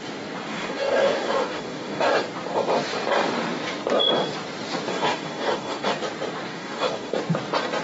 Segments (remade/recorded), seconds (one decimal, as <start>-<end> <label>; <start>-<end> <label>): 0.0-0.5 recorded; 0.5-2.1 remade; 2.1-4.9 recorded; 4.9-5.9 remade; 5.9-6.5 recorded; 6.5-7.1 remade; 7.1-7.8 recorded